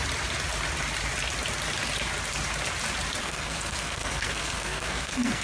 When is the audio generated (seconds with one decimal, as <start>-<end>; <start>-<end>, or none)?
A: 3.2-5.4

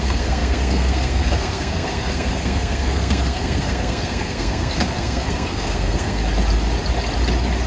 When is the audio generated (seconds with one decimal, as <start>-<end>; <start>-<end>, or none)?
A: 0.0-6.2